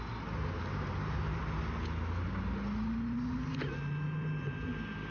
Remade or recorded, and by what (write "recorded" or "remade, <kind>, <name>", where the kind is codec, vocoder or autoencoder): recorded